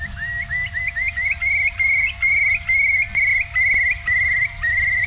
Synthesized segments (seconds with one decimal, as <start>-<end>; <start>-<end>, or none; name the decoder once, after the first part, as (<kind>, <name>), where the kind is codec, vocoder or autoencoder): none